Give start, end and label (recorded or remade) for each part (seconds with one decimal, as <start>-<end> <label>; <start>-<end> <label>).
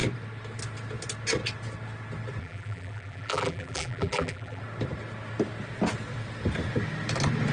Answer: 0.0-2.4 recorded; 2.4-4.6 remade; 4.6-7.5 recorded